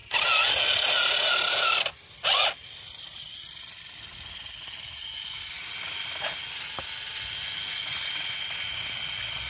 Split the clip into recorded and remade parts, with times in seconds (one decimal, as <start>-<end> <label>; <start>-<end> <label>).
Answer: 0.0-9.5 recorded